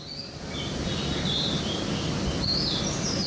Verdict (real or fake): real